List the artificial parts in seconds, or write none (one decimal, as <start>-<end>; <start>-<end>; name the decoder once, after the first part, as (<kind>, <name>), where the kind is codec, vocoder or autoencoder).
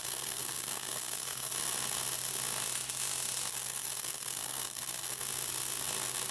0.0-1.5 (codec, SNAC); 3.5-5.2